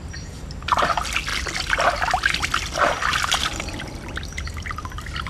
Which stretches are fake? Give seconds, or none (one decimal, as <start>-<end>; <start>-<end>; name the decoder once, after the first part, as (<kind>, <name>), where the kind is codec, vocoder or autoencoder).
none